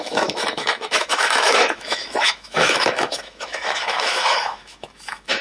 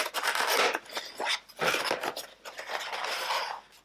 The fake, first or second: first